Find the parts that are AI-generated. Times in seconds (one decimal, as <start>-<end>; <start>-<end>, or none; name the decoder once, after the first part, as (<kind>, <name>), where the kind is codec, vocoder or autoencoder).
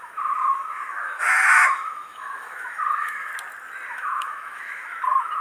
0.0-3.3 (autoencoder, DAC-VAE); 3.9-5.4